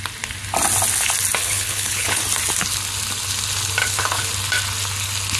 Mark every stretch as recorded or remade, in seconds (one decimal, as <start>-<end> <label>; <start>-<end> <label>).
0.0-1.4 recorded; 1.4-2.2 remade; 2.2-3.8 recorded; 3.8-4.3 remade; 4.3-5.4 recorded